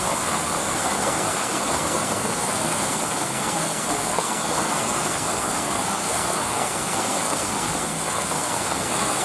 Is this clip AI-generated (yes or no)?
yes